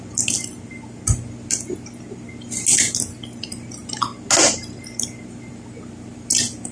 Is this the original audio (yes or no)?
yes